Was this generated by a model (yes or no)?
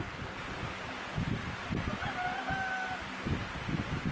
no